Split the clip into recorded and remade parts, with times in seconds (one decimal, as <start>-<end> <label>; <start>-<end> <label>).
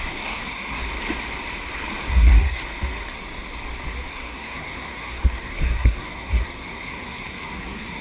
0.0-0.8 remade; 0.8-2.1 recorded; 2.1-2.6 remade; 2.6-4.1 recorded; 4.1-8.0 remade